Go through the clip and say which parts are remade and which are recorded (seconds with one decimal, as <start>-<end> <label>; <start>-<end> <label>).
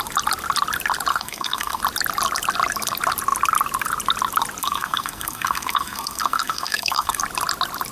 0.0-1.1 recorded; 1.1-1.8 remade; 1.8-4.6 recorded; 4.6-7.2 remade; 7.2-7.9 recorded